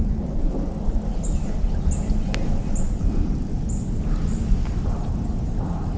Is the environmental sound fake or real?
real